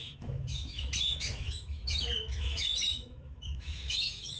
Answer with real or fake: fake